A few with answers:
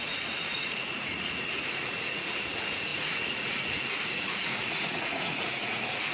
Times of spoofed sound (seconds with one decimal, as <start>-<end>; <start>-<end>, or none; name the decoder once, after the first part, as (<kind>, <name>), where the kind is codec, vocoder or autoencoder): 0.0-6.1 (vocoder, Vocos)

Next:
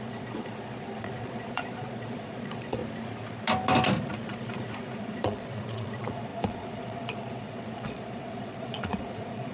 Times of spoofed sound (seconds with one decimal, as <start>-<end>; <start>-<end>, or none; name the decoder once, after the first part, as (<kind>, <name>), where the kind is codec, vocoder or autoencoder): 0.0-2.8 (vocoder, Vocos); 4.0-9.5

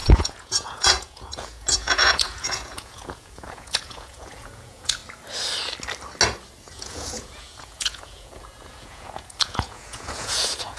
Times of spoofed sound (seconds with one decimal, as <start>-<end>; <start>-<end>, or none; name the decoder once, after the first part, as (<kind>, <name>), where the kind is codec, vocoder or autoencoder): 0.0-5.0 (vocoder, Vocos); 6.7-10.8

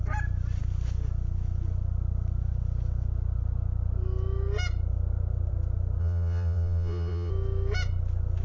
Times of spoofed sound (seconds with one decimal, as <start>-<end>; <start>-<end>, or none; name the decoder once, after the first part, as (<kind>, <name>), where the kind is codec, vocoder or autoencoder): 6.0-7.3 (vocoder, Vocos)

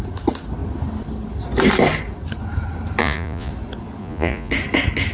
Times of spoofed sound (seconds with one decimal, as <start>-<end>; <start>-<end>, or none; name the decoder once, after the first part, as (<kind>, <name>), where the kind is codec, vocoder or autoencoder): 3.0-3.5 (vocoder, Vocos); 4.0-4.5

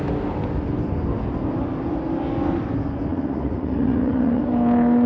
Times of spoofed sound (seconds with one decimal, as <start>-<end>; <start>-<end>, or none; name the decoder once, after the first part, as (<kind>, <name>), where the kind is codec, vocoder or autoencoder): 3.1-4.4 (vocoder, Vocos)

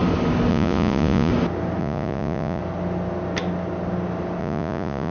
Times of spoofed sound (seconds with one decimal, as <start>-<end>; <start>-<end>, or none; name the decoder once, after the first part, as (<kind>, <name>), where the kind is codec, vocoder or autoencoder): 0.5-1.3 (vocoder, Vocos); 1.8-2.6; 4.4-5.1

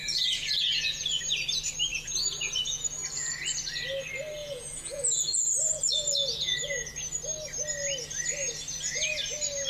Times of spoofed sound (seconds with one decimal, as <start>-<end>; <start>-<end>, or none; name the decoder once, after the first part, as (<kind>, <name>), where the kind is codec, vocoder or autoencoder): 0.0-1.2 (vocoder, Vocos); 1.9-3.3; 4.4-6.9